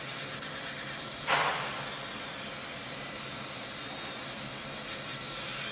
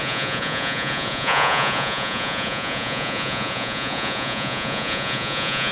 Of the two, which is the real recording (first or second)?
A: first